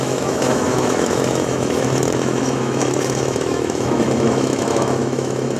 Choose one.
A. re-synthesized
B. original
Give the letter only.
A